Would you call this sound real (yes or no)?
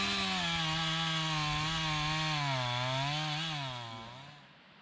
yes